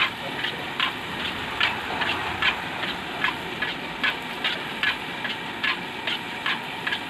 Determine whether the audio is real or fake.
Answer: real